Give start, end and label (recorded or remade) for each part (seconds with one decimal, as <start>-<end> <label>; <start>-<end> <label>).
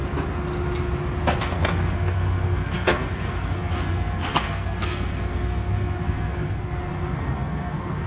0.0-1.4 recorded; 1.4-8.1 remade